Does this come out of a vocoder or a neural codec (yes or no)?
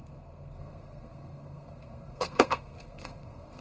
yes